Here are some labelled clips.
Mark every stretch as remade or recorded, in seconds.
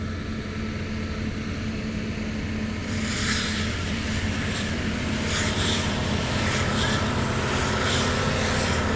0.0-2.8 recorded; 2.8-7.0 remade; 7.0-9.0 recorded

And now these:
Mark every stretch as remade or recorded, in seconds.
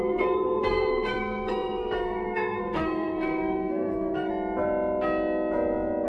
0.0-4.3 remade; 4.3-6.1 recorded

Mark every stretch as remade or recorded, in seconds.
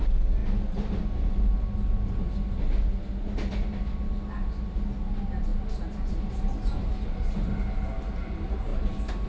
0.0-9.3 recorded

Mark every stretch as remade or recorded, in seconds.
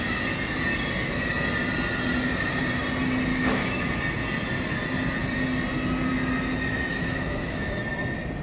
0.0-3.3 recorded; 3.3-3.9 remade; 3.9-6.9 recorded; 6.9-7.8 remade; 7.8-8.4 recorded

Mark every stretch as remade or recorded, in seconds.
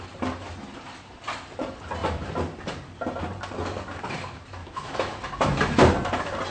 0.0-4.6 recorded; 4.6-5.2 remade; 5.2-6.5 recorded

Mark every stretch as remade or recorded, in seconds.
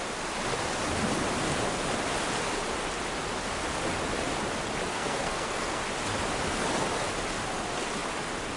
0.0-4.9 recorded; 4.9-5.8 remade; 5.8-8.6 recorded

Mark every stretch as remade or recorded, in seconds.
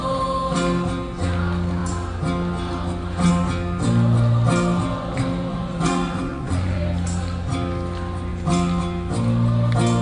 0.0-5.5 recorded; 5.5-6.8 remade; 6.8-10.0 recorded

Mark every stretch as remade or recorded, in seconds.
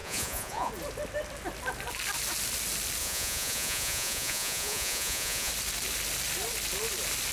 0.0-0.7 remade; 0.7-3.0 recorded; 3.0-5.5 remade; 5.5-7.3 recorded